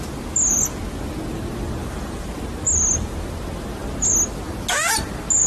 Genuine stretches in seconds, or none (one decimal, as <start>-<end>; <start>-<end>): 0.0-1.8; 2.4-5.5